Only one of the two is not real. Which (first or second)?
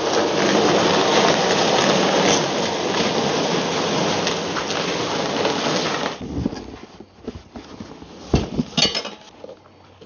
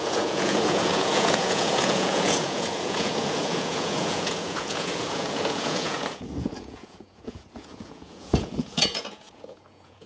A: second